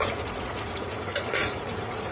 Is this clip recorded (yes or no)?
no